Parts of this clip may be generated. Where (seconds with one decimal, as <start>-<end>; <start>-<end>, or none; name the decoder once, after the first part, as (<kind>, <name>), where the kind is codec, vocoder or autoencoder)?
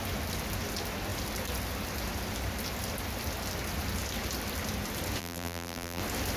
5.2-6.0 (vocoder, BigVGAN v2)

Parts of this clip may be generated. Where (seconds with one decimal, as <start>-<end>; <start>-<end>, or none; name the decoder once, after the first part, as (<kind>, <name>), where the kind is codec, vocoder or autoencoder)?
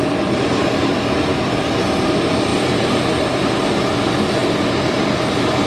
none